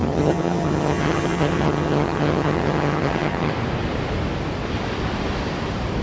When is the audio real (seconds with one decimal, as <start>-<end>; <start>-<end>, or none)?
3.5-6.0

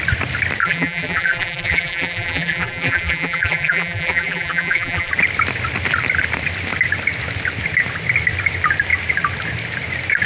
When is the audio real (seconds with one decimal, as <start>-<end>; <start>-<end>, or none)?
0.0-0.6; 5.1-10.3

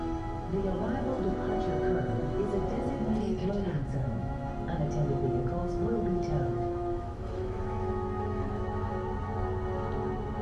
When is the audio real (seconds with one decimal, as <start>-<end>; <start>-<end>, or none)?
0.0-3.4; 4.5-5.6; 8.9-10.4

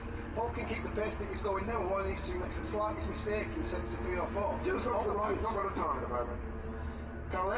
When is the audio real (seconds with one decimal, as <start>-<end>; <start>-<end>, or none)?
0.0-7.6

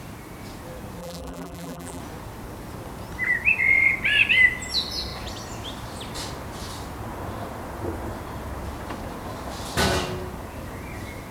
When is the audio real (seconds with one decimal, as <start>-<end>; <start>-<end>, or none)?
0.0-1.0; 2.0-11.3

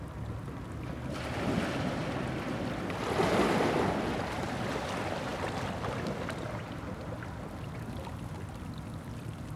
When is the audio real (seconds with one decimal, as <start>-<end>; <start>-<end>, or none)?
0.0-9.6

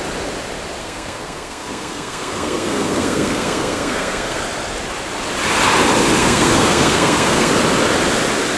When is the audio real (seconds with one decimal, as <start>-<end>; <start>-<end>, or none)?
0.0-0.8; 4.4-6.2; 7.5-8.6